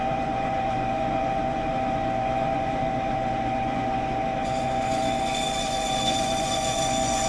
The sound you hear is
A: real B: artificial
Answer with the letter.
B